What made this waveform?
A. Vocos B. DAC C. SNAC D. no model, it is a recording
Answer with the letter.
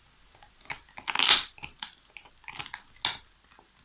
D